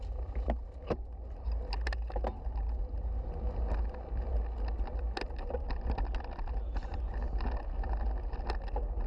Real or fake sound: real